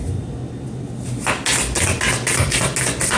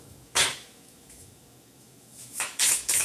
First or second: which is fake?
second